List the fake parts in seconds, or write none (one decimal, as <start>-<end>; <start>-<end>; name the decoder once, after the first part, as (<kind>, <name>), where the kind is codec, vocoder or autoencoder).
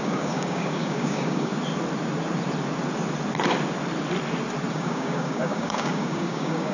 0.0-1.5 (codec, DAC); 4.7-6.7